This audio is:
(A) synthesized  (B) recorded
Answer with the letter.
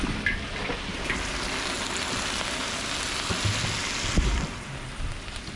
B